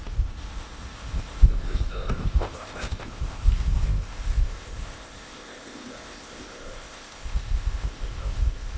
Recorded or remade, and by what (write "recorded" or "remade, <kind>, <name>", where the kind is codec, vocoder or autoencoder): remade, codec, ZipCodec